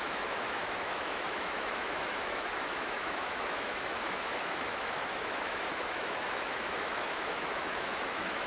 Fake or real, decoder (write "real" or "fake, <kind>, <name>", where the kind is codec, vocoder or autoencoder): fake, autoencoder, DAC-VAE